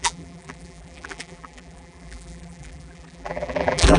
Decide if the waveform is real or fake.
fake